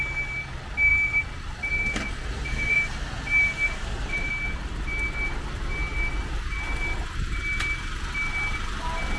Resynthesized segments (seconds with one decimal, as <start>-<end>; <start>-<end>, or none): 0.9-4.3